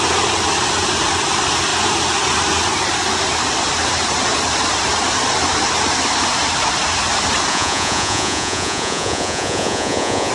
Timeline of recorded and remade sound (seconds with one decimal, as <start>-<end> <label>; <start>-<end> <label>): 0.0-7.5 recorded; 7.5-10.3 remade